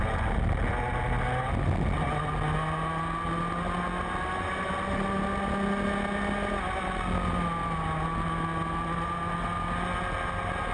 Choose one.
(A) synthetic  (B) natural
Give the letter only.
B